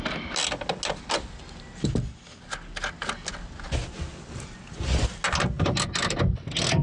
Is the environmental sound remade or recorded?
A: recorded